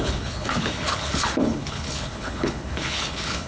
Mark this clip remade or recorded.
remade